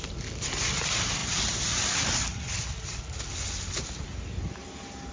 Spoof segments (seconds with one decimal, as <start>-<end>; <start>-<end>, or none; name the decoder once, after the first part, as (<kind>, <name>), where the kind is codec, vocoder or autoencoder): none